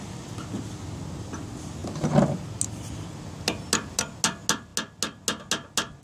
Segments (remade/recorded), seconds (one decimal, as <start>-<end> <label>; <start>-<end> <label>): 0.0-6.0 recorded